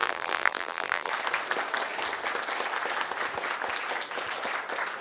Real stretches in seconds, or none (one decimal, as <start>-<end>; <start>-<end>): 1.1-5.0